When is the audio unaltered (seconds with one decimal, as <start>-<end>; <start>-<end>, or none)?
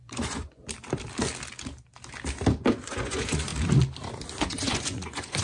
0.6-2.8; 3.5-4.4